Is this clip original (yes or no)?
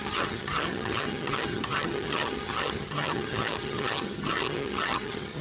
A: no